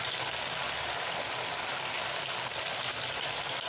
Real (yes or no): yes